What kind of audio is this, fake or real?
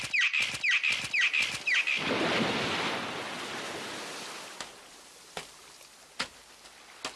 real